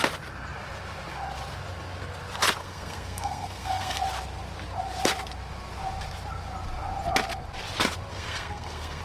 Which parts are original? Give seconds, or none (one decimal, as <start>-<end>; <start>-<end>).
0.0-2.6; 4.0-8.1